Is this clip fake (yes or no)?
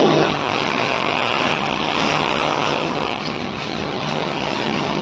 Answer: yes